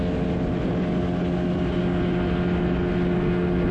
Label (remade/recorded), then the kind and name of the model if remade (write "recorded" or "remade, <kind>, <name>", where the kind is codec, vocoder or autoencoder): recorded